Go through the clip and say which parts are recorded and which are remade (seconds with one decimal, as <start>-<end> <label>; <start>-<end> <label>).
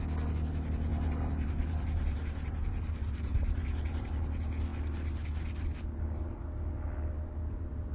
0.0-0.9 recorded; 0.9-4.1 remade; 4.1-7.9 recorded